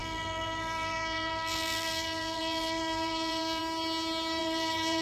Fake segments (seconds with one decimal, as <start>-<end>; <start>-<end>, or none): 0.0-3.6; 4.4-5.0